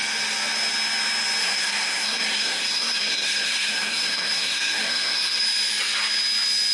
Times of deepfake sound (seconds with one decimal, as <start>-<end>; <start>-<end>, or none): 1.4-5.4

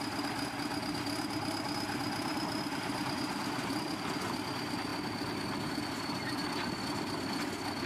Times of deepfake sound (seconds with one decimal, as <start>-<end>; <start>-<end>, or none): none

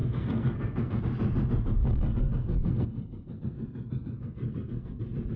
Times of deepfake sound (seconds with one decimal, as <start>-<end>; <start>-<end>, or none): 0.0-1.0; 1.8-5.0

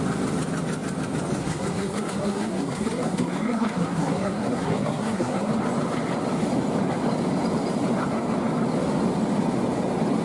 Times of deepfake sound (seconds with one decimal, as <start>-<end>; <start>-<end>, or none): 1.4-5.5